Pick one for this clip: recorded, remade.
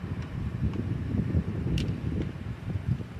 remade